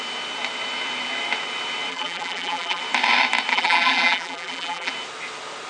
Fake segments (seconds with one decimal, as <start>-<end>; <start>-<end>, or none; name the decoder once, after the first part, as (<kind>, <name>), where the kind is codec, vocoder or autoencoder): 1.9-2.8 (vocoder, BigVGAN v2); 3.5-4.9